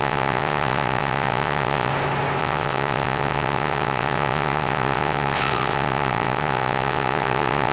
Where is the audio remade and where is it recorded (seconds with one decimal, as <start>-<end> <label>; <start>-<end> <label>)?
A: 0.0-1.9 remade; 1.9-2.4 recorded; 2.4-7.7 remade